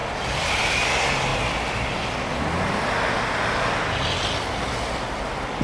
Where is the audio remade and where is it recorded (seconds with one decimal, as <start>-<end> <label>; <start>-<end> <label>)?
0.0-5.6 recorded